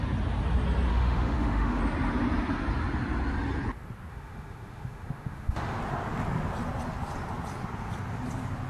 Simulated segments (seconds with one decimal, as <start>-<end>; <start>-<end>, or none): 0.9-1.8; 4.1-5.8

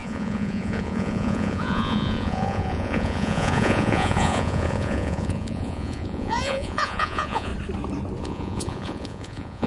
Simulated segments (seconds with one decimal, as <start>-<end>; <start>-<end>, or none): 0.0-7.5; 8.2-9.7

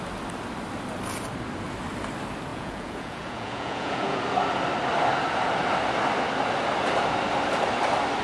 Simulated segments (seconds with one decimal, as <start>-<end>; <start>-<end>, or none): 2.5-4.2

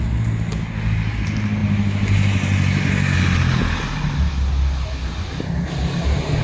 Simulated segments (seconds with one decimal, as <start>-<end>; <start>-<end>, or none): none

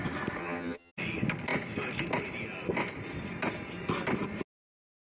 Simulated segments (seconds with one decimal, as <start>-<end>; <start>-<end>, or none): 0.4-0.9

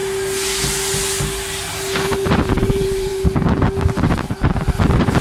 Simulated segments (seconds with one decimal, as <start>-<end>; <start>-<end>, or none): 2.1-3.1; 4.5-5.2

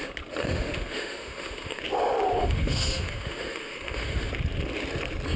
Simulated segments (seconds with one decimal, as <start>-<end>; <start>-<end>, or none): 0.4-1.8; 2.4-4.3

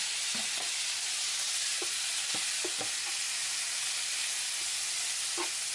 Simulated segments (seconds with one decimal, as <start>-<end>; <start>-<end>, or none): 1.7-2.9; 3.4-4.3